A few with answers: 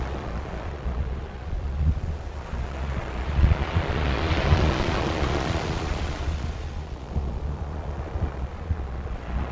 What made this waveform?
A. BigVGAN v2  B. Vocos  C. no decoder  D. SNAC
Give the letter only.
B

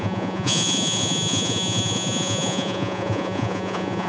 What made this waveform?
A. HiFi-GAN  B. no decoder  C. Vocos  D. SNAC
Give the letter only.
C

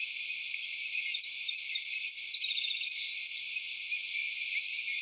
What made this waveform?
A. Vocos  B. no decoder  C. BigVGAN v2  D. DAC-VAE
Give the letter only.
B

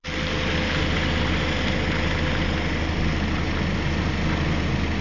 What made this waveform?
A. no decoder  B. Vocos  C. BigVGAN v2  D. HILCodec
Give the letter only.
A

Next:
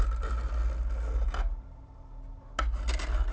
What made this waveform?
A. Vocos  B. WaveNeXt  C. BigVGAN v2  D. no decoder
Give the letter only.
D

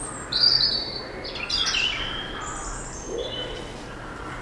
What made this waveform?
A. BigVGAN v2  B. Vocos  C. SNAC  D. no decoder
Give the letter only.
D